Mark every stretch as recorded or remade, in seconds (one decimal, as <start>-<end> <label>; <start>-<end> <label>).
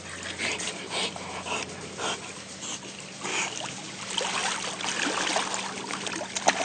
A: 0.0-3.3 recorded; 3.3-4.0 remade; 4.0-6.6 recorded